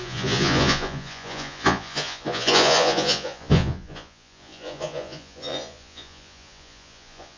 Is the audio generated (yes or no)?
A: yes